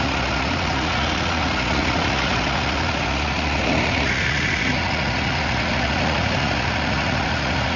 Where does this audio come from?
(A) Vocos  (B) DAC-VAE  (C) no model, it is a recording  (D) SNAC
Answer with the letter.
A